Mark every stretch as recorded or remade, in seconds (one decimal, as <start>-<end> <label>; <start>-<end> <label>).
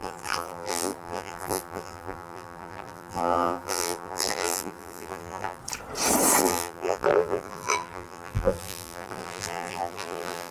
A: 0.0-5.6 remade; 5.6-6.4 recorded; 6.4-10.5 remade